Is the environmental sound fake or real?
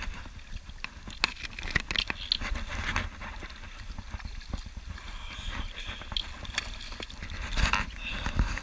real